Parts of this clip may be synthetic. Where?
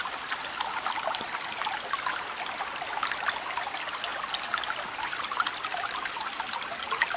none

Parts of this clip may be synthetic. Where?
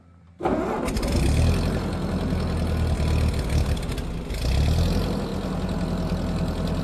none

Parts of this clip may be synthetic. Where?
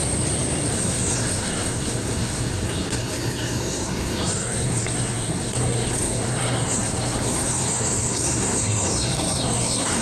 0.7-10.0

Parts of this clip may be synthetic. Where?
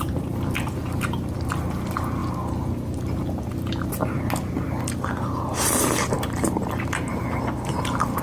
none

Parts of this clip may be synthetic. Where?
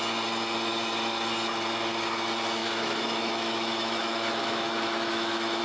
2.6-5.6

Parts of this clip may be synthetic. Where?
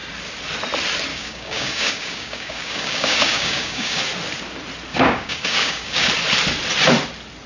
1.1-4.0; 4.9-6.1